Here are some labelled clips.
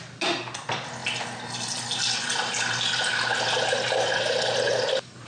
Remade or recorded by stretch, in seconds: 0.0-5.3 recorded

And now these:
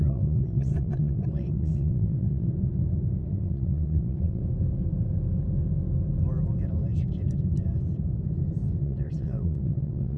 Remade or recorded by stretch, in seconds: 0.0-2.5 remade; 2.5-3.3 recorded; 3.3-4.4 remade; 4.4-8.8 recorded; 8.8-10.2 remade